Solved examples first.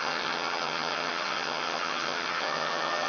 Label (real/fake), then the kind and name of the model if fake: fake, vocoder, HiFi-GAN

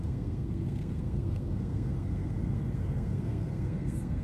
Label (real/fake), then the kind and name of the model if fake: fake, codec, SNAC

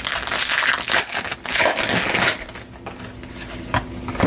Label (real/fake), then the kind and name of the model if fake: real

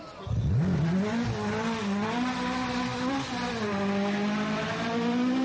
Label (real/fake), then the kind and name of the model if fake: real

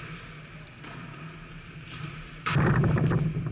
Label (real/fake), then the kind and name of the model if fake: fake, vocoder, BigVGAN v2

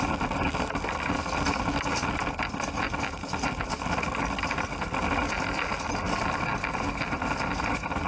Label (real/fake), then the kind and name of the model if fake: real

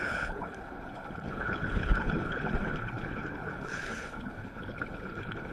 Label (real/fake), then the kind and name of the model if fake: fake, codec, HILCodec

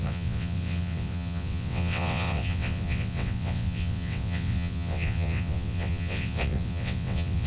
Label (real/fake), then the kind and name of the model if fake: fake, vocoder, WaveNeXt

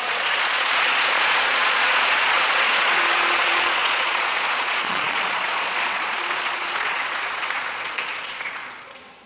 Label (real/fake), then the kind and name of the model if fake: fake, vocoder, Vocos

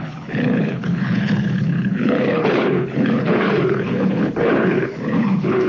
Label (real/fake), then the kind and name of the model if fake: fake, codec, HILCodec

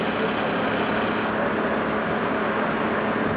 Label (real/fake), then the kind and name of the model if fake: real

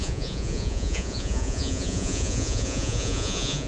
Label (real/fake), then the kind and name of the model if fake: fake, vocoder, Vocos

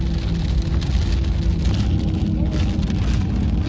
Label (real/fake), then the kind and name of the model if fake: real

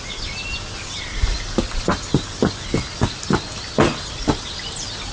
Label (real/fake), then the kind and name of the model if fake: real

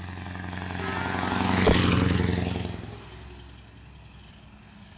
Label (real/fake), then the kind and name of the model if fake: real